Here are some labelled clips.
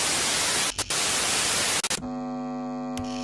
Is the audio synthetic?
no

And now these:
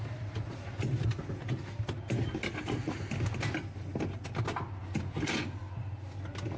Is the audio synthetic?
no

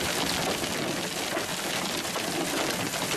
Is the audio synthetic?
no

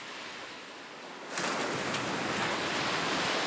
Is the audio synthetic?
no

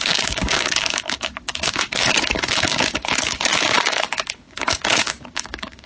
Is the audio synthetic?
yes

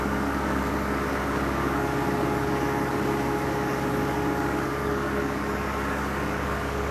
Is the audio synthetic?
yes